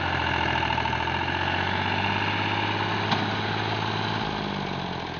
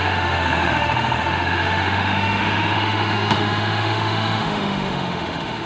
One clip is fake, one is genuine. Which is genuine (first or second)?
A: first